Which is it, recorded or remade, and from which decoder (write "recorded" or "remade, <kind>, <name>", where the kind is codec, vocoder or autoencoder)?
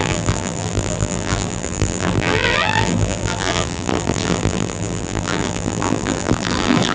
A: remade, vocoder, BigVGAN v2